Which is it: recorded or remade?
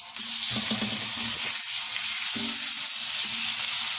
recorded